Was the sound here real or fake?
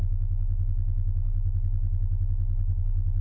real